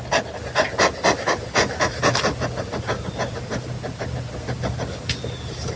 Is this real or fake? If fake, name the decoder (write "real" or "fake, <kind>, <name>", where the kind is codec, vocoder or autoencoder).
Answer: real